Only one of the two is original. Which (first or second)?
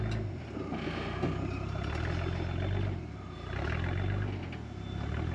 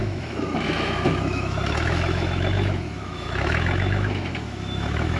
first